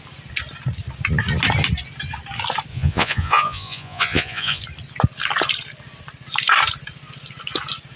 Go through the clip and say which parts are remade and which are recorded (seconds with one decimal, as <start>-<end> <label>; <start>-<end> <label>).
0.0-2.7 recorded; 2.7-4.6 remade; 4.6-8.0 recorded